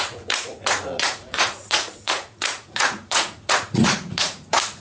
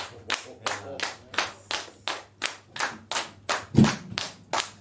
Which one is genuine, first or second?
second